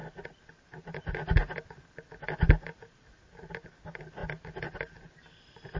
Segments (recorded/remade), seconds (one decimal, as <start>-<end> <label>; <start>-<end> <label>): 0.0-5.8 recorded